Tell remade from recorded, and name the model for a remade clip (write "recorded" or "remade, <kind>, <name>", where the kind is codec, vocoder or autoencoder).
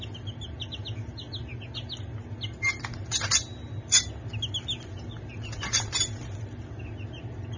recorded